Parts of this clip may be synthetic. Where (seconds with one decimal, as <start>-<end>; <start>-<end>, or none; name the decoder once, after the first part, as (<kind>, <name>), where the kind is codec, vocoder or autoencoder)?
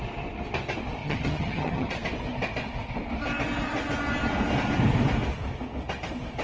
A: 1.0-1.9 (vocoder, HiFi-GAN)